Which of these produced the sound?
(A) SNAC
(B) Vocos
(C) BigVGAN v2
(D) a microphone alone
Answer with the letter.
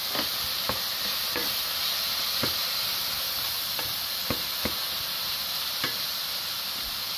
C